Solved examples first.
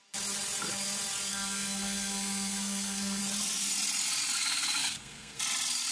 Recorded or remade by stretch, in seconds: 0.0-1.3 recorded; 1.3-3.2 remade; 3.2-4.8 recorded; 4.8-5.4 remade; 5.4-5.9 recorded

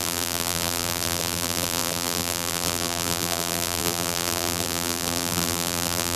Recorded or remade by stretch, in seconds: 0.0-6.2 remade

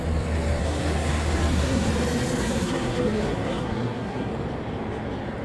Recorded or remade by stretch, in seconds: 0.0-0.6 recorded; 0.6-1.9 remade; 1.9-2.4 recorded; 2.4-4.3 remade; 4.3-5.4 recorded

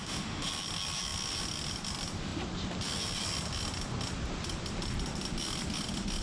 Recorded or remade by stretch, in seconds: 0.0-0.5 remade; 0.5-6.2 recorded

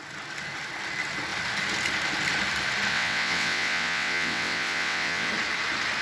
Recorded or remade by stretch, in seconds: 0.0-2.9 recorded; 2.9-5.3 remade; 5.3-6.0 recorded

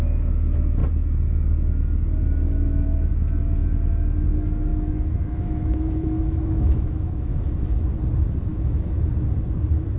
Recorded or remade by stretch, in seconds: 0.0-4.7 recorded; 4.7-7.7 remade; 7.7-8.5 recorded; 8.5-9.1 remade; 9.1-10.0 recorded